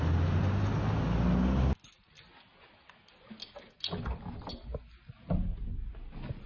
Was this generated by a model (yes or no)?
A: no